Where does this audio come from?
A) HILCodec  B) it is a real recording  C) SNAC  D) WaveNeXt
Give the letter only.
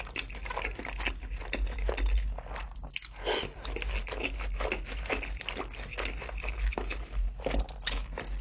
B